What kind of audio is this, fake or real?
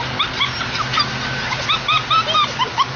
real